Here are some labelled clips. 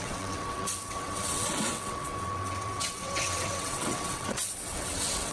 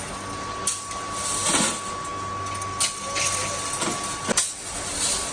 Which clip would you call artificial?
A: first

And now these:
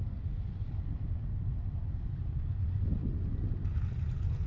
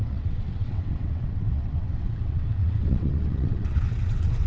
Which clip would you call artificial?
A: second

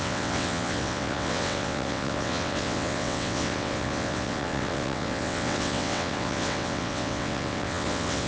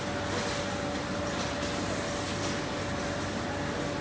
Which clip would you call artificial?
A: first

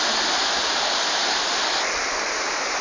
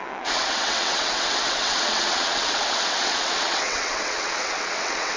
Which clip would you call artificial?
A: second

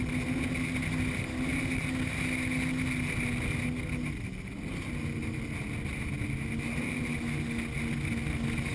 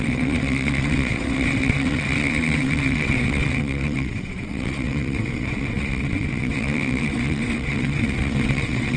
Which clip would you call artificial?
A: second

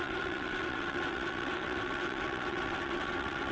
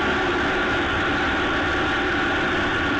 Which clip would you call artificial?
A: first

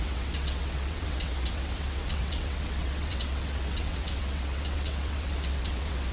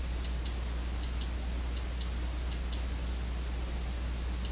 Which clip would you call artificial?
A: first